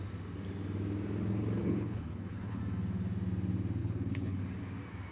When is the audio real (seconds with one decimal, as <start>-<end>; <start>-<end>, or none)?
0.0-1.6; 2.6-3.8; 4.4-5.1